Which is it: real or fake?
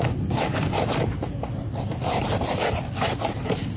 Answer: real